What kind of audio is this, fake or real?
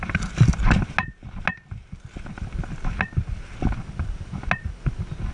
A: real